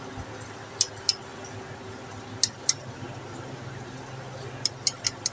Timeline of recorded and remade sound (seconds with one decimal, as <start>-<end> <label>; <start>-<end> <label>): 0.0-5.3 recorded